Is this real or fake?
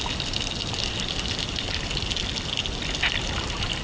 real